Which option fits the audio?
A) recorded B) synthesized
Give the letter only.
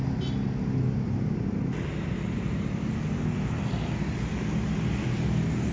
A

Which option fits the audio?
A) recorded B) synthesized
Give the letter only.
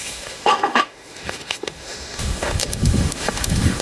B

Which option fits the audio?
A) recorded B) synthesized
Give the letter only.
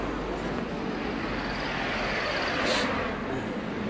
A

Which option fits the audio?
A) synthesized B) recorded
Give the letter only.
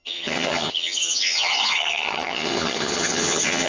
A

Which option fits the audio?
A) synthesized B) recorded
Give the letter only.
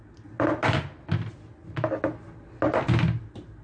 B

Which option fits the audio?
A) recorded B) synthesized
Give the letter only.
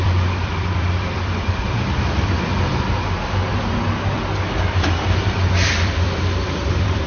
B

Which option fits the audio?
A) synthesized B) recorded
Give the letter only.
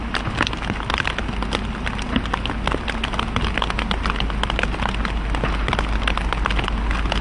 B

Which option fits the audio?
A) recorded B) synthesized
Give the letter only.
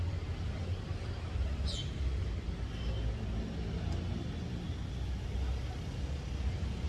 A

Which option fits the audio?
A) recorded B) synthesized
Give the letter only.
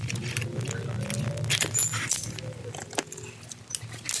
A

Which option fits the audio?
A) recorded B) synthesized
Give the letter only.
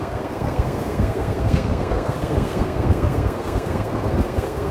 B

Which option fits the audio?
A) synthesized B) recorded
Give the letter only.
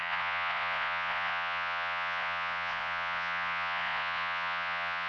A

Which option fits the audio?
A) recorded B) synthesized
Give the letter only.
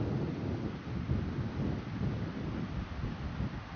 A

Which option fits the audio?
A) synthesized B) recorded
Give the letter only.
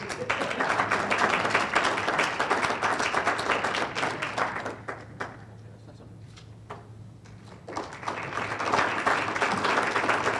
B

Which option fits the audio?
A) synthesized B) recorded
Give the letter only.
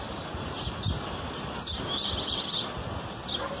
B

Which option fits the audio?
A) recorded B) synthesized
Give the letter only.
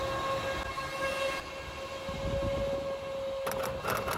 A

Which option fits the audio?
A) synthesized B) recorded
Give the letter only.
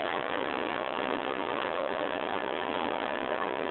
A